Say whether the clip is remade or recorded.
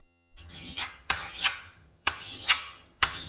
remade